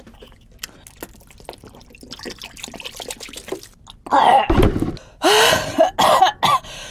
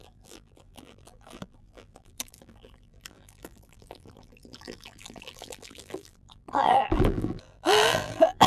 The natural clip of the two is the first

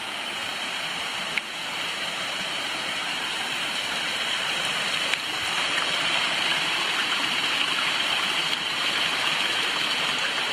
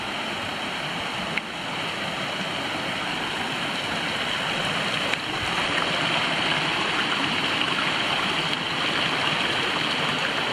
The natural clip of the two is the second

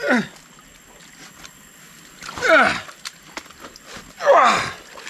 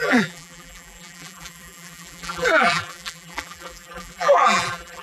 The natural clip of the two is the first